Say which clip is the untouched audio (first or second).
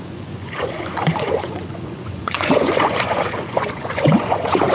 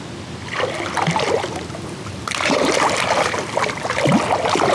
second